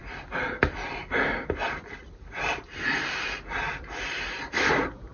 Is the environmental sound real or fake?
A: fake